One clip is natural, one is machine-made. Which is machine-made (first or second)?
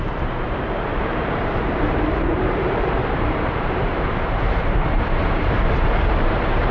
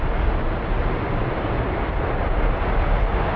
first